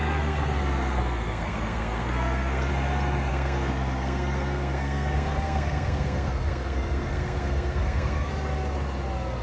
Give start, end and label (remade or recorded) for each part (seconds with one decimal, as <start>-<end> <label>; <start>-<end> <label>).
0.0-2.7 remade; 2.7-3.3 recorded; 3.3-8.3 remade; 8.3-9.4 recorded